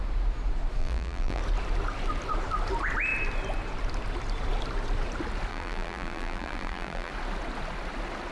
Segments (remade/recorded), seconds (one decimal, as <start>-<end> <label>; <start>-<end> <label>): 0.0-0.8 recorded; 0.8-1.4 remade; 1.4-5.5 recorded; 5.5-7.1 remade; 7.1-8.3 recorded